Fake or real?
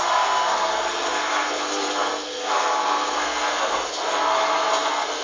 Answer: fake